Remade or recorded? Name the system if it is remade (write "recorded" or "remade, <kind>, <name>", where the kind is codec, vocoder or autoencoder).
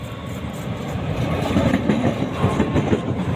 remade, vocoder, BigVGAN v2